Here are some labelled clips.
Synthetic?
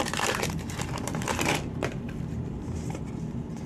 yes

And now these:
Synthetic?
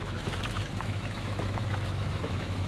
yes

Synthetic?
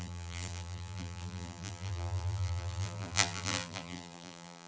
yes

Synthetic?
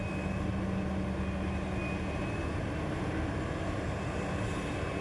no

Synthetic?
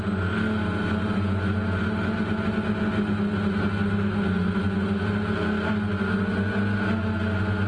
no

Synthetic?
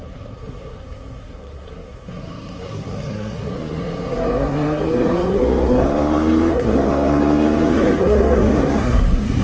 yes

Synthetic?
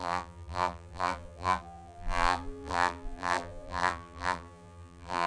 yes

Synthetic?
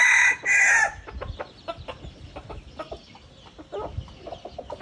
no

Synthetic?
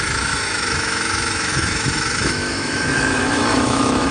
yes